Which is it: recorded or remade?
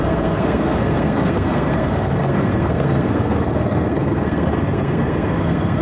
remade